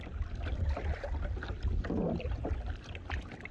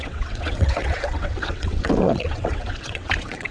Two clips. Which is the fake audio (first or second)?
second